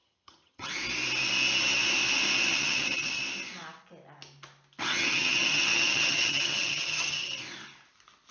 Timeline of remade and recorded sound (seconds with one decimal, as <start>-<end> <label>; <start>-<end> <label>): 0.0-0.7 remade; 0.7-2.5 recorded; 2.5-3.2 remade; 3.2-4.9 recorded; 4.9-7.4 remade; 7.4-8.3 recorded